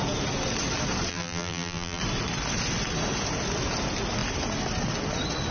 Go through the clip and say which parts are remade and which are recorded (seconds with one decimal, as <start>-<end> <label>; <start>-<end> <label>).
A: 0.0-1.1 recorded; 1.1-2.0 remade; 2.0-5.5 recorded

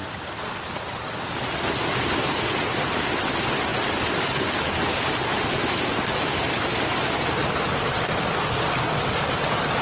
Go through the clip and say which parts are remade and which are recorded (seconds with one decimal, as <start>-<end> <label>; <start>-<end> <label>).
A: 0.0-9.8 recorded

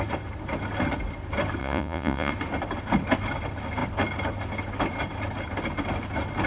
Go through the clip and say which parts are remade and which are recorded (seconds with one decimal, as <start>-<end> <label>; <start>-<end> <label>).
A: 0.0-1.6 recorded; 1.6-2.3 remade; 2.3-6.5 recorded

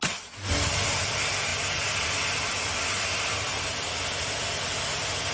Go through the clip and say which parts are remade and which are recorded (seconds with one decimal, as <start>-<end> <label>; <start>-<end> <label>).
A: 0.0-5.3 recorded